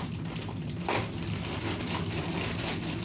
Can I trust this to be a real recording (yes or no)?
yes